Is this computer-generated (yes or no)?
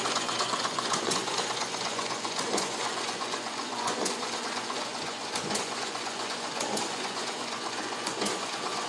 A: yes